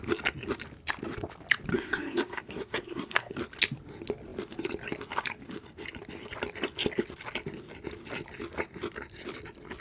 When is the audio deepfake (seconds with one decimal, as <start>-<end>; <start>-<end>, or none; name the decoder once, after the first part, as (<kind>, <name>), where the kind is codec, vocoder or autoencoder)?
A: 1.7-3.4 (codec, SNAC)

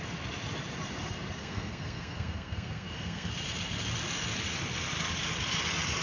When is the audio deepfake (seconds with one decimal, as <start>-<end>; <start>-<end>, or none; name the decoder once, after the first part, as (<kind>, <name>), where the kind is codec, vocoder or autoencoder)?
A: 1.4-3.3 (codec, SNAC)